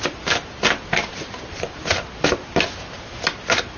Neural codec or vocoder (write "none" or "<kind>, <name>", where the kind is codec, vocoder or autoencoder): none